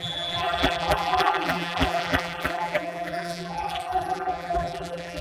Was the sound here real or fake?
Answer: fake